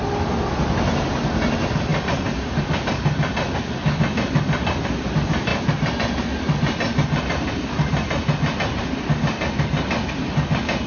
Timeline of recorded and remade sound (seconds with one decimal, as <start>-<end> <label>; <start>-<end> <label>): 0.0-10.9 recorded